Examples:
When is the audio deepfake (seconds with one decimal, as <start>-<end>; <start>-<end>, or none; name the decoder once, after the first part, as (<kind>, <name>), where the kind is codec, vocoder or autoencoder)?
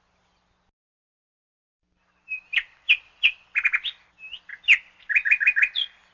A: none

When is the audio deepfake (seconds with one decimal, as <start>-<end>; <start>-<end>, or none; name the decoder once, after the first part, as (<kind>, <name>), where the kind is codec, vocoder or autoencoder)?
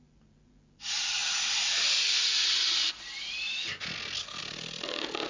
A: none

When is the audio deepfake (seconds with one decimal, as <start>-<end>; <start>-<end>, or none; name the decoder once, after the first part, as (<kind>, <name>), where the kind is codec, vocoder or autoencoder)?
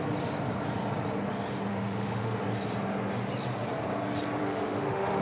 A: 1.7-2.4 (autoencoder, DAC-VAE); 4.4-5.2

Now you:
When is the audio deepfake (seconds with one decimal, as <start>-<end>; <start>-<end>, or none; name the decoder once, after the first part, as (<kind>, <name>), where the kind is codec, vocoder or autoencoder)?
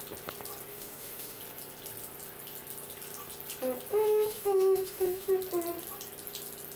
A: 0.7-1.4 (autoencoder, DAC-VAE); 3.9-5.3